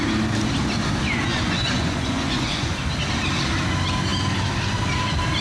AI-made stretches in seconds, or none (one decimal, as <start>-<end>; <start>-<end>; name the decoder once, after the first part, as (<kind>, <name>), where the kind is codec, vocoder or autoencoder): 1.3-2.8 (vocoder, Vocos)